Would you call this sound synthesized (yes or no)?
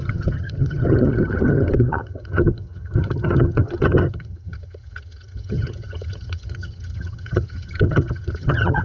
yes